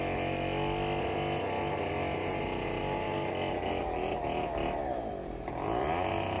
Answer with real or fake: real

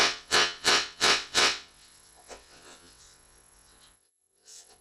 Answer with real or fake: fake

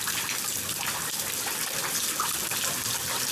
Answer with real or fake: real